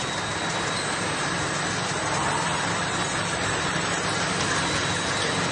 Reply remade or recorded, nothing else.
recorded